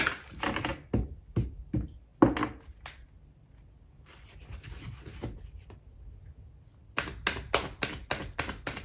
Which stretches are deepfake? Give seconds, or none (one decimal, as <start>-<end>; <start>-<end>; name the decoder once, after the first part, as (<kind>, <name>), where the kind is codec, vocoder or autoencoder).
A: none